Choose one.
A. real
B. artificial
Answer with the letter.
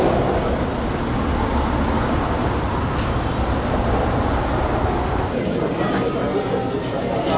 A